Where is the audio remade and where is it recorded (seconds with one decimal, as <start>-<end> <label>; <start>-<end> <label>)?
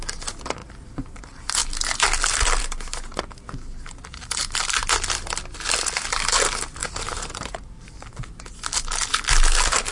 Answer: 0.0-6.8 recorded; 6.8-7.9 remade; 7.9-9.9 recorded